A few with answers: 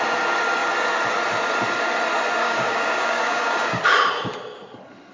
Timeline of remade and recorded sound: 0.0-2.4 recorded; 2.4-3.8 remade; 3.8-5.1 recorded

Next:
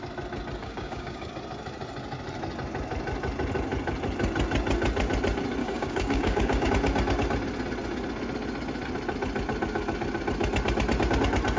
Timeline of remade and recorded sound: 0.0-0.6 recorded; 0.6-1.3 remade; 1.3-5.6 recorded; 5.6-6.7 remade; 6.7-11.6 recorded

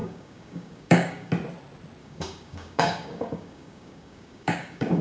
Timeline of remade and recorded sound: 0.0-1.3 remade; 1.3-2.0 recorded; 2.0-5.0 remade

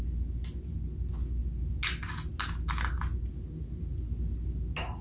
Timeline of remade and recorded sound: 0.0-5.0 recorded

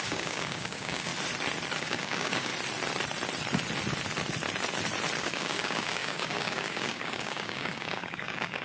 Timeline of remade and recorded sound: 0.0-1.1 remade; 1.1-1.8 recorded; 1.8-2.5 remade; 2.5-5.2 recorded; 5.2-8.6 remade

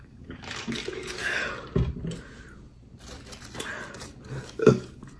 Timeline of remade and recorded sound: 0.0-1.4 remade; 1.4-3.9 recorded; 3.9-5.2 remade

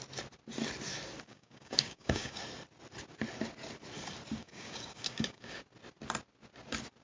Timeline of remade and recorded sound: 0.0-1.3 recorded; 1.3-2.4 remade; 2.4-4.4 recorded; 4.4-5.6 remade; 5.6-7.0 recorded